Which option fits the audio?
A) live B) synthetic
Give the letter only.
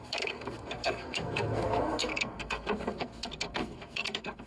B